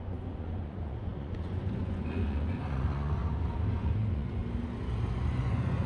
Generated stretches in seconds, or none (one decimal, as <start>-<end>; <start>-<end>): 0.0-3.2; 3.8-4.4; 5.1-5.9